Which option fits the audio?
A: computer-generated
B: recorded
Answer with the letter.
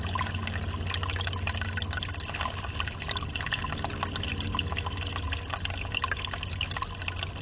B